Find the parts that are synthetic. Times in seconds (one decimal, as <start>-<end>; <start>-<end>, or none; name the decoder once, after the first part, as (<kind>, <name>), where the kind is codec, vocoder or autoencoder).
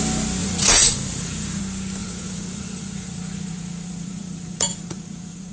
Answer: 0.4-1.6 (vocoder, Vocos); 2.0-5.5